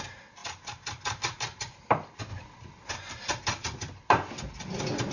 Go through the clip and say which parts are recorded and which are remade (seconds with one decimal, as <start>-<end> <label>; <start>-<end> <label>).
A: 0.0-5.1 recorded